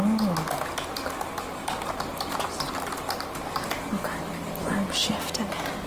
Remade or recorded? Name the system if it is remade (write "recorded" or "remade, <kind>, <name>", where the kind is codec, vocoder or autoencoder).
recorded